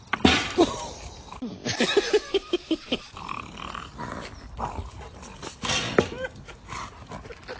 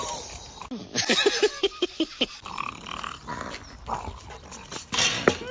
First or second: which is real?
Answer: second